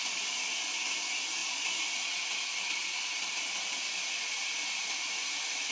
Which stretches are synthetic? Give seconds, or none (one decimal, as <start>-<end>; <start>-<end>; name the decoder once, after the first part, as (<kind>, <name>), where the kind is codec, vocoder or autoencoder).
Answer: none